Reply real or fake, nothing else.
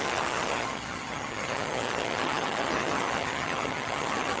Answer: fake